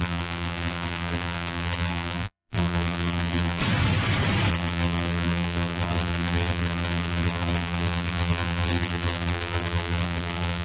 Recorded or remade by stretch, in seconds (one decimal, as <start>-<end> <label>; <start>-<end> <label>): 0.0-3.6 remade; 3.6-4.5 recorded; 4.5-10.6 remade